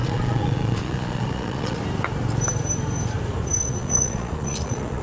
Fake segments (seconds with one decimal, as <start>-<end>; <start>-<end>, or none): 0.0-1.8; 3.7-5.0